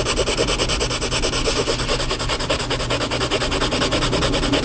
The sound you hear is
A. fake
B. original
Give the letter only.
B